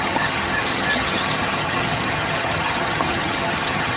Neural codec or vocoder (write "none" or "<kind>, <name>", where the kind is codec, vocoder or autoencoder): vocoder, HiFi-GAN